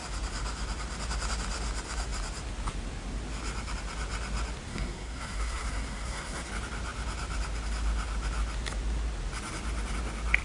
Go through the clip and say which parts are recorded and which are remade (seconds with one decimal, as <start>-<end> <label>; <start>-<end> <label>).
0.0-4.7 recorded; 4.7-6.5 remade; 6.5-10.4 recorded